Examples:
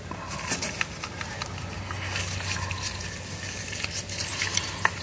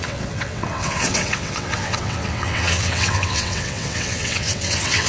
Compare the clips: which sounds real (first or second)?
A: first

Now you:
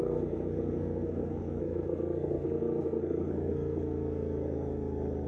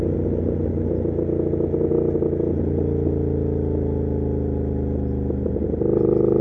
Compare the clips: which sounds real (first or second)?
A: second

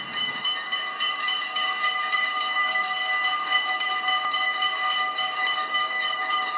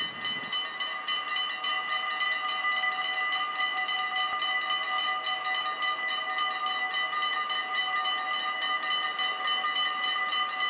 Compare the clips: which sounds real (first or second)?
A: second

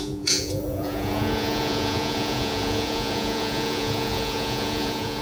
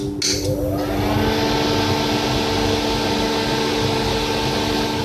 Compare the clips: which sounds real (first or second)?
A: second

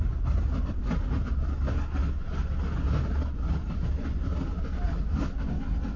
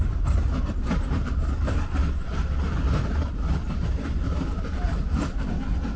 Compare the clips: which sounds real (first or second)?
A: first